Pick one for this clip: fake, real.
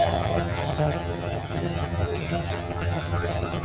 fake